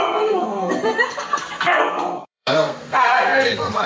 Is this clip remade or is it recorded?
remade